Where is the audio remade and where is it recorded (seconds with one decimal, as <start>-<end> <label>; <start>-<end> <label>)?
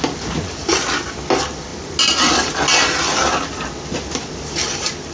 0.0-5.1 recorded